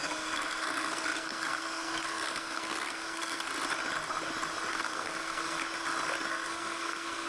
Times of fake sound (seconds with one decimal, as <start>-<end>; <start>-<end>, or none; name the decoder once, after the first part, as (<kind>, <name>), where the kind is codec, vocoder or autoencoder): 0.0-3.5 (codec, SNAC); 4.7-5.6; 6.3-7.3